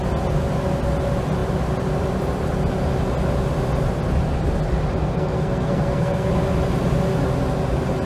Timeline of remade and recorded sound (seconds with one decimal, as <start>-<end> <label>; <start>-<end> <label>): 0.0-5.0 recorded; 5.0-6.3 remade; 6.3-8.1 recorded